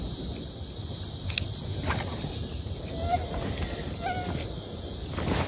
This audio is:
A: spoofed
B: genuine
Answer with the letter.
B